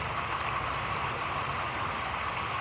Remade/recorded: recorded